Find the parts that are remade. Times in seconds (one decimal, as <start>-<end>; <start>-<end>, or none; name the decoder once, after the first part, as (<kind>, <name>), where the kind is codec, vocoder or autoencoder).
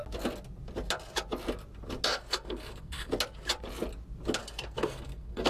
2.1-3.1 (codec, SNAC); 4.4-5.5